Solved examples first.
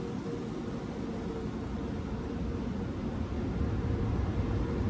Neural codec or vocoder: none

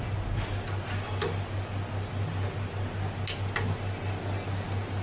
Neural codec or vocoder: none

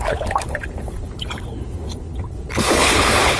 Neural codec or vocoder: codec, HILCodec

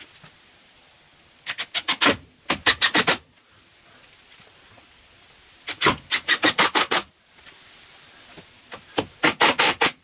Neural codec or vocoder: none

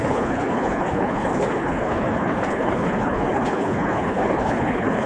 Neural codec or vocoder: codec, HILCodec